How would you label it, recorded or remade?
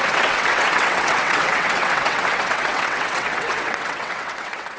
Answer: remade